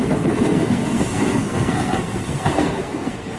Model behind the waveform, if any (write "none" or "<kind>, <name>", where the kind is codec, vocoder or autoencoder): codec, SNAC